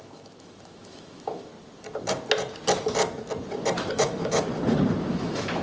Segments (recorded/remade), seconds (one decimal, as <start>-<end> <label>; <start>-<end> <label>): 0.0-1.5 remade; 1.5-3.9 recorded; 3.9-4.5 remade; 4.5-5.1 recorded; 5.1-5.6 remade